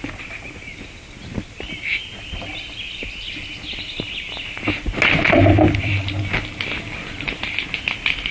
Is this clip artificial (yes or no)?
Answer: no